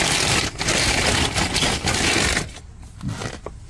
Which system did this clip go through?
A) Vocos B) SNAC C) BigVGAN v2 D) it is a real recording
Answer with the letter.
D